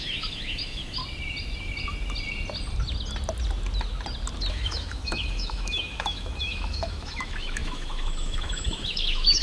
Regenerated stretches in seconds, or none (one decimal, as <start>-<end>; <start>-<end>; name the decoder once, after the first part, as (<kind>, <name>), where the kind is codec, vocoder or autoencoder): 0.0-1.0 (autoencoder, DAC-VAE); 4.5-9.4